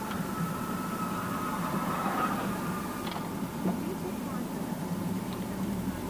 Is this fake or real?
fake